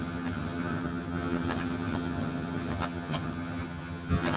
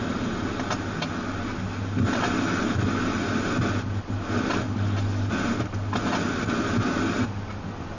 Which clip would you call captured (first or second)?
second